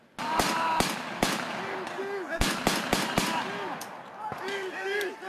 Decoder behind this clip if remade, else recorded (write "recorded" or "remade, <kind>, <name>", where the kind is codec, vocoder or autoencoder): recorded